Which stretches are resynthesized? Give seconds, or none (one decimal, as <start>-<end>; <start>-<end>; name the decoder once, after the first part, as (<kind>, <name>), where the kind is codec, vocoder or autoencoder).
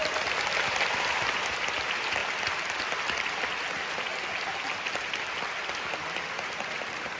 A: none